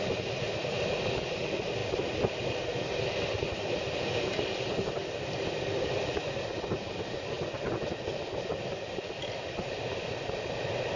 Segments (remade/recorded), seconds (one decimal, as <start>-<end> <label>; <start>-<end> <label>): 0.0-11.0 recorded